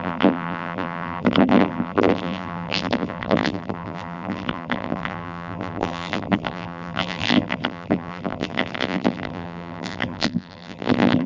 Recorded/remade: remade